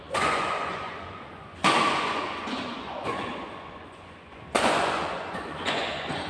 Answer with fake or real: fake